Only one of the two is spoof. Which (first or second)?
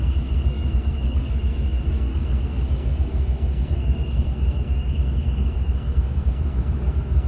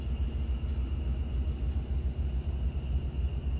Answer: first